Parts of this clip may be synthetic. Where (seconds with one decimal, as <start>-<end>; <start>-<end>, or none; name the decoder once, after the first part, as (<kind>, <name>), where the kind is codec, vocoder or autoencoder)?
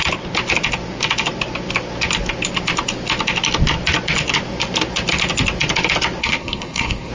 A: 6.2-7.1 (codec, SNAC)